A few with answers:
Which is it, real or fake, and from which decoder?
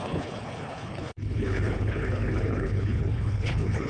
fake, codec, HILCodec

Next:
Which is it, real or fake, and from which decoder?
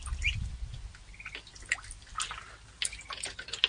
real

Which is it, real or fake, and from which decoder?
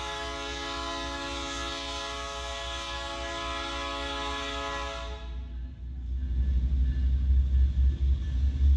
real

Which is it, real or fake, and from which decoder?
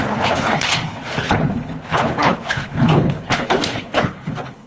fake, codec, HILCodec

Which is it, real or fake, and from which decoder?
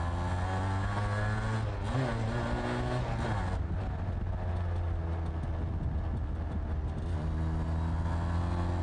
real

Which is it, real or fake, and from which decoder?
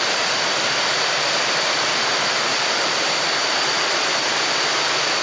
real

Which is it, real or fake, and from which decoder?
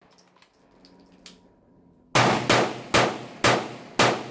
real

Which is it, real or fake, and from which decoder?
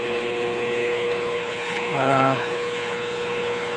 fake, codec, HILCodec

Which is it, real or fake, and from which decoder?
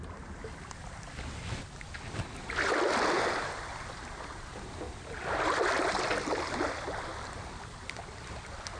real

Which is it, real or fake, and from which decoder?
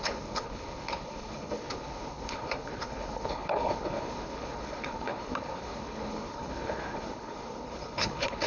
fake, codec, HILCodec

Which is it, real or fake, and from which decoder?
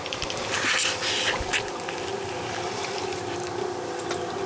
real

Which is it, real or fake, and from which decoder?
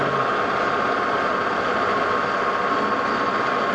real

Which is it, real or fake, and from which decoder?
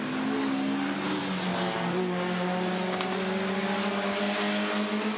real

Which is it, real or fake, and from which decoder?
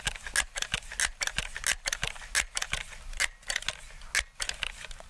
real